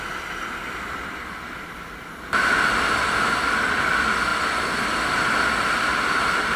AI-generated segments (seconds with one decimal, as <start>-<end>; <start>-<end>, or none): none